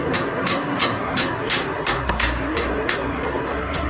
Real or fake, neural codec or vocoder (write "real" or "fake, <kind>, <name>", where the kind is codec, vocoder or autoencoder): fake, codec, SNAC